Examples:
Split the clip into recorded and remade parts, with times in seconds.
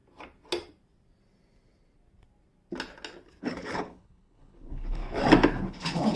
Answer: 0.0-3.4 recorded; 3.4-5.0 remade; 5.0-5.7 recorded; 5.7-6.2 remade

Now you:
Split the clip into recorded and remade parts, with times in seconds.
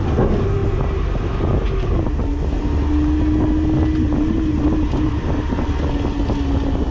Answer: 0.0-6.9 recorded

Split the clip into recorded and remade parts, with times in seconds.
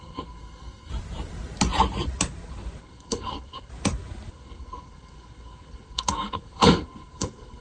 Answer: 0.0-0.9 remade; 0.9-2.8 recorded; 2.8-3.7 remade; 3.7-4.3 recorded; 4.3-7.6 remade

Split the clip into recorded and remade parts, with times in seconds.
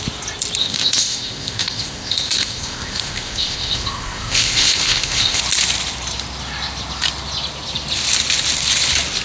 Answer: 0.0-0.6 recorded; 0.6-5.4 remade; 5.4-9.2 recorded